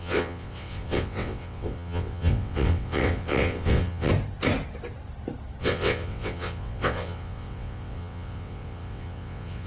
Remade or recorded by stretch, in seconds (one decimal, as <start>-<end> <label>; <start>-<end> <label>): 0.0-4.1 remade; 4.1-5.6 recorded; 5.6-9.7 remade